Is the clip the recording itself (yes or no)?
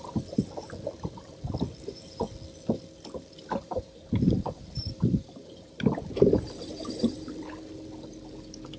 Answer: no